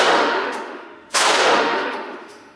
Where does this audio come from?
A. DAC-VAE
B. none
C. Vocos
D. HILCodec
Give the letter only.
A